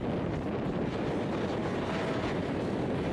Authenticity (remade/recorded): recorded